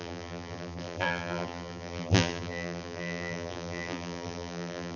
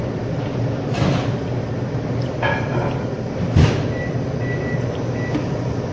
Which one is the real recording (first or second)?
second